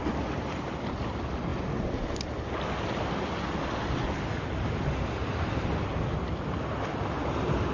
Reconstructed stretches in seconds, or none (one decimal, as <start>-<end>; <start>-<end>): none